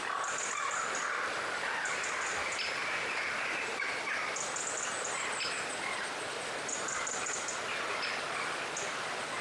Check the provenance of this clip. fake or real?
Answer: real